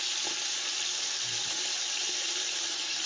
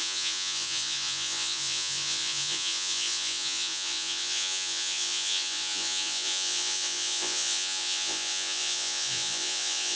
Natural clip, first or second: first